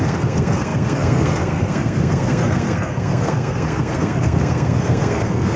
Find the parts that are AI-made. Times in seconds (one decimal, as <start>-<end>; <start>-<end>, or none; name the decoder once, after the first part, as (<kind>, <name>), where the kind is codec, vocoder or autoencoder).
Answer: 0.0-5.6 (codec, SNAC)

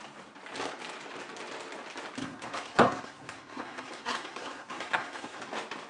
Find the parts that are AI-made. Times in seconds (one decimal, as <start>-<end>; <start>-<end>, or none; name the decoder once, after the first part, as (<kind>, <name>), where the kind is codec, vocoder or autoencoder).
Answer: 2.2-5.4 (codec, SNAC)

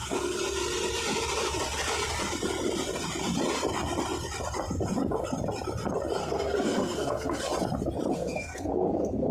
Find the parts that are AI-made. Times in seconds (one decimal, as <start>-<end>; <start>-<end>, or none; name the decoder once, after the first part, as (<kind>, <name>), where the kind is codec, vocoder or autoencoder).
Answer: 6.2-7.4 (codec, SNAC); 8.1-9.3

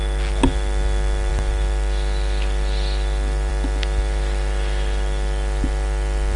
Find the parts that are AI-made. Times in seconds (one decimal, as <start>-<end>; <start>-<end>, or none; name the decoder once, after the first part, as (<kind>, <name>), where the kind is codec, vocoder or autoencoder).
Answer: none